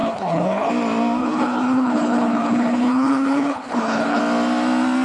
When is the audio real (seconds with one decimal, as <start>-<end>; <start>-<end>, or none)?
0.7-1.2; 4.2-5.0